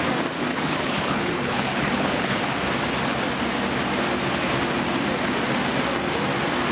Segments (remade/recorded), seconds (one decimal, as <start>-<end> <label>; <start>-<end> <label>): 0.0-0.5 recorded; 0.5-2.4 remade; 2.4-6.7 recorded